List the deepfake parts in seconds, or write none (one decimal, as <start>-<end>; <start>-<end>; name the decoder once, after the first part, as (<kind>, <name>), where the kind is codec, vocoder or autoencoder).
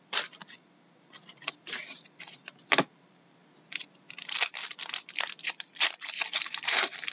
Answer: 0.0-3.4 (vocoder, BigVGAN v2); 4.3-7.1